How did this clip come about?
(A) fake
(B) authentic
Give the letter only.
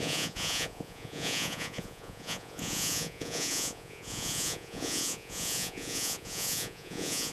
A